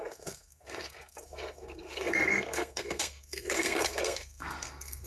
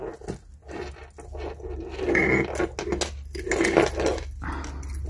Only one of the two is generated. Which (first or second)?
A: first